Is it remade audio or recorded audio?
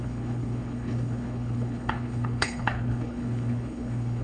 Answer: remade